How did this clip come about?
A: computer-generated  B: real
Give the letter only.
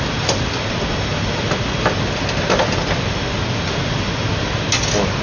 B